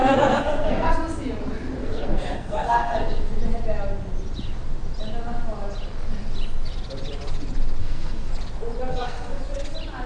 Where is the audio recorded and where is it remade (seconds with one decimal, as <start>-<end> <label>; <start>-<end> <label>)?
0.0-0.9 remade; 0.9-1.8 recorded; 1.8-3.3 remade; 3.3-7.8 recorded; 7.8-8.3 remade; 8.3-8.9 recorded; 8.9-9.4 remade; 9.4-10.1 recorded